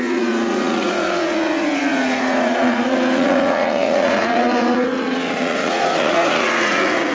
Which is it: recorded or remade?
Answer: remade